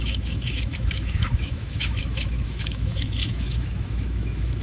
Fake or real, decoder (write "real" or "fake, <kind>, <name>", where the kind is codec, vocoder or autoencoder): fake, autoencoder, DAC-VAE